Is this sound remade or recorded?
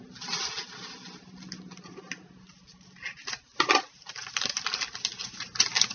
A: recorded